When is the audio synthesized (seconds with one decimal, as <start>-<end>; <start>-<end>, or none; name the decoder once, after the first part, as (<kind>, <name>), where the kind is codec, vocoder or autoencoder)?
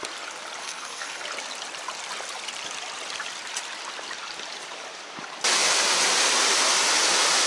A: 0.6-1.2 (codec, SNAC)